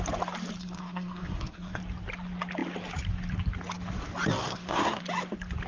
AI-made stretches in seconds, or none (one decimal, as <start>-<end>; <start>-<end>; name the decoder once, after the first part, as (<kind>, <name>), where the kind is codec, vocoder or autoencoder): 0.6-1.8 (codec, SNAC); 4.4-5.0